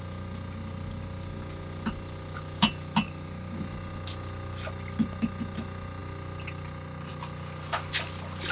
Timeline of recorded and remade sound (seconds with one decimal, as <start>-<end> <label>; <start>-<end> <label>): 0.0-8.5 recorded